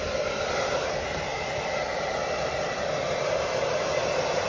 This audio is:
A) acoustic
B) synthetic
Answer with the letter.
A